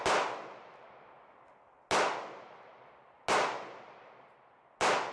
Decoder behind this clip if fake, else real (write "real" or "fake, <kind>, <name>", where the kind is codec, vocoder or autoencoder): real